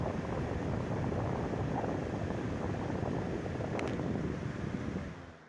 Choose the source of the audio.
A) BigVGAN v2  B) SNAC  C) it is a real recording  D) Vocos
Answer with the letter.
C